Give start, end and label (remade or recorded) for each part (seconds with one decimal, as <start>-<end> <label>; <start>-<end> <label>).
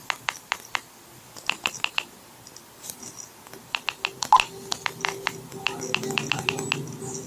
0.0-7.3 recorded